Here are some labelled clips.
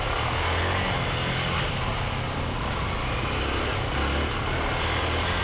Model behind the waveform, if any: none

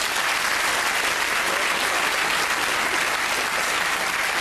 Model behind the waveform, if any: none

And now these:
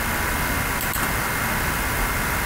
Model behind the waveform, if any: none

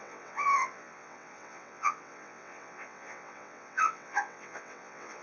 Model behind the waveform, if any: vocoder, WaveNeXt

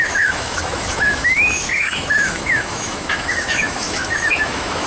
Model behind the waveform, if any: autoencoder, DAC-VAE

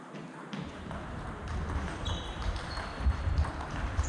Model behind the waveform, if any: vocoder, BigVGAN v2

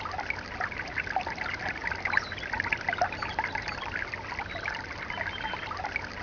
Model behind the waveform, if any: none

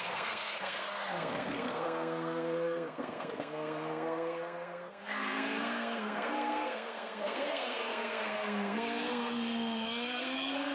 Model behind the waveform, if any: codec, SNAC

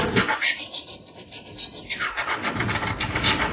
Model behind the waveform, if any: none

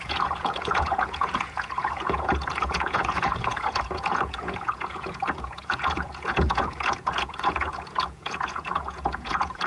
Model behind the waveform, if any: vocoder, Vocos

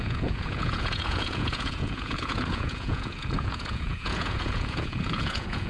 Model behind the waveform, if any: vocoder, Vocos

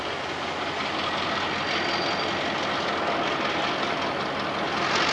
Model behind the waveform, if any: none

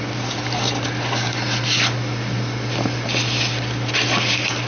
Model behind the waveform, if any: none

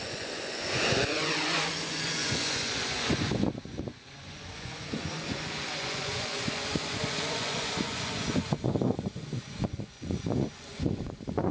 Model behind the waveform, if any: vocoder, Vocos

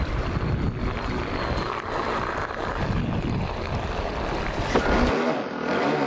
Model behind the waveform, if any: none